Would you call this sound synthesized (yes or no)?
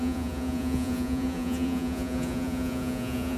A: yes